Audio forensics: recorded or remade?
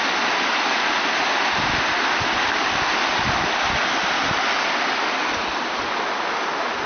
recorded